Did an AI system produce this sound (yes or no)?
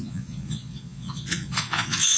yes